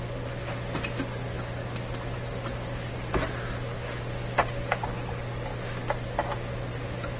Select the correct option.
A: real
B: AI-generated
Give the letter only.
A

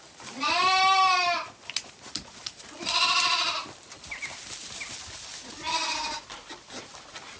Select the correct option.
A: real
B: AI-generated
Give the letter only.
A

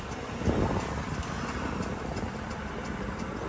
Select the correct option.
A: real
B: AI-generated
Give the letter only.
A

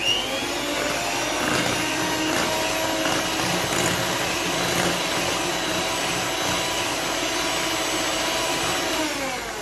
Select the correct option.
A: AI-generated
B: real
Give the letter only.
B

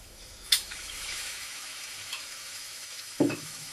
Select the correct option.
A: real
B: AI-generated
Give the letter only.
B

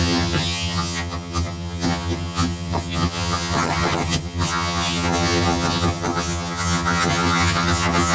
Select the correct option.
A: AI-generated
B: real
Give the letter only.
A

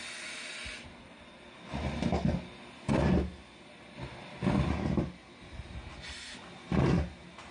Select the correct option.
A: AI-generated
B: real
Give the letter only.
B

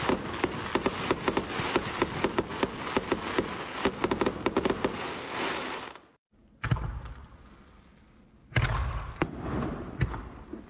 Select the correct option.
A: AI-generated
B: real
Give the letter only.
B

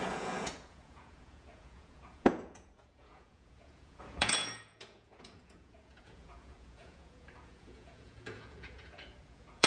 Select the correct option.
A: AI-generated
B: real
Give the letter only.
A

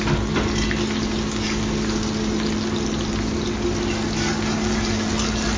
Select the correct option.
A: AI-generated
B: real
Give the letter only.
B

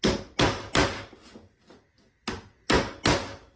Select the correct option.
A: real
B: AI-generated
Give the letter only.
A